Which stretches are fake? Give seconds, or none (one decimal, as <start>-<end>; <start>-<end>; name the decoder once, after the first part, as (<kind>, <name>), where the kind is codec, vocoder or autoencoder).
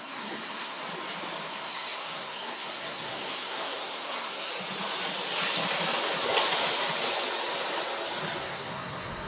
0.0-0.8 (codec, SNAC); 1.5-4.5; 8.4-9.3